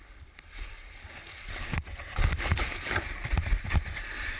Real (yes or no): no